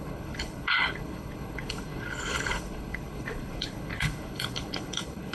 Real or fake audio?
fake